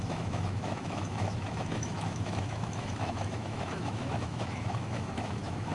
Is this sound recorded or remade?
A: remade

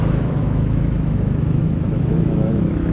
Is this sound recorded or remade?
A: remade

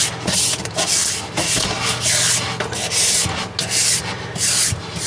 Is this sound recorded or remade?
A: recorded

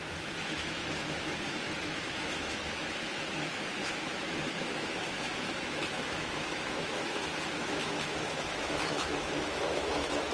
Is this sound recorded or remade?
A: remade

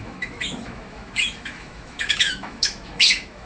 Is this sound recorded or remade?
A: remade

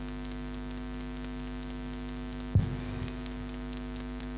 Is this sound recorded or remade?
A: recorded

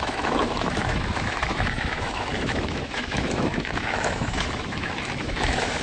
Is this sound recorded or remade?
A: remade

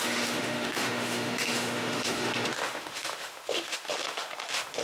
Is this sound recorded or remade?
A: remade